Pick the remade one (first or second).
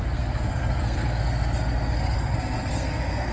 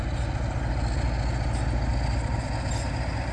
first